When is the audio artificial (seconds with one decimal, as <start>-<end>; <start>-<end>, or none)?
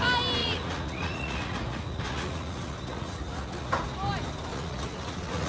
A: 0.4-3.7; 4.5-5.5